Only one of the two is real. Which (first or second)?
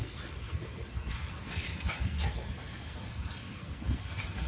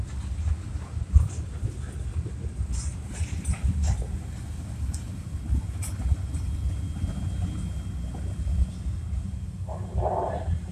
second